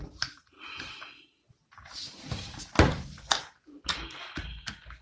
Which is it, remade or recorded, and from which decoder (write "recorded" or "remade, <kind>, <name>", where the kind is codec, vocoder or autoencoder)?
recorded